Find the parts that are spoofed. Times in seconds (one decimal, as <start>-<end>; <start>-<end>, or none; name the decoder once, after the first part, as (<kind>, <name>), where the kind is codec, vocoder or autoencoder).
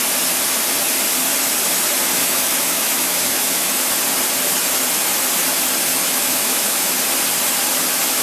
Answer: 2.1-3.9 (autoencoder, DAC-VAE); 5.9-7.0